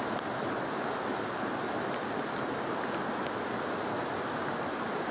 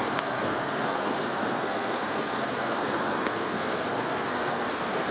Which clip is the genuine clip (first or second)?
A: first